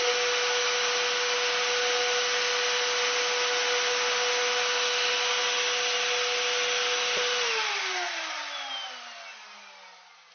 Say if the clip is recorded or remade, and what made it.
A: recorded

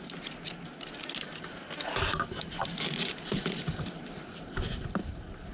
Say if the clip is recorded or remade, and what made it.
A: recorded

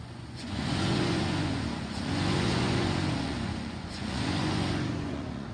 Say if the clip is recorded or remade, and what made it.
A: remade, vocoder, Vocos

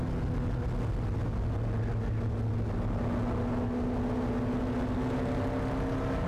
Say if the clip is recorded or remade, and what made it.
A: recorded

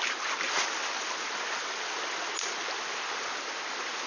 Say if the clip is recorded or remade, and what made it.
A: recorded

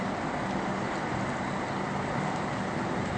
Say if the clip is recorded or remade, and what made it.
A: recorded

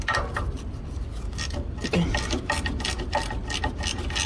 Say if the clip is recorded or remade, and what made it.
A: recorded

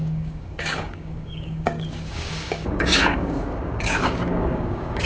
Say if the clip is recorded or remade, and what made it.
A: remade, codec, DAC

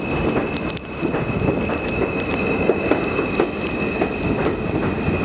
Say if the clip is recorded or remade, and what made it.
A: recorded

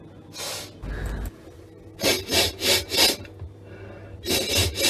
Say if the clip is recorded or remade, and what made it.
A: recorded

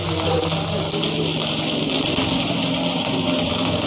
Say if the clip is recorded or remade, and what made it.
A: recorded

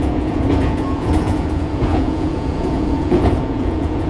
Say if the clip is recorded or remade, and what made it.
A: remade, vocoder, Vocos